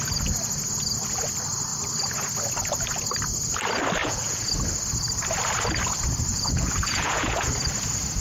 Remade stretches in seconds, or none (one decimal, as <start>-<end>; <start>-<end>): 4.0-4.5; 6.3-7.5